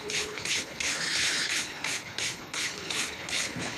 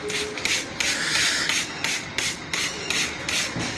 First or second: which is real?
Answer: second